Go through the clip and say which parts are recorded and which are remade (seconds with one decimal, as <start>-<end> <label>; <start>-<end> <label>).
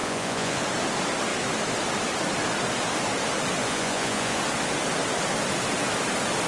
0.0-0.6 remade; 0.6-3.6 recorded; 3.6-4.4 remade; 4.4-6.5 recorded